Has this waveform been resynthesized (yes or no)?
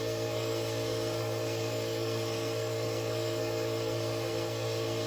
yes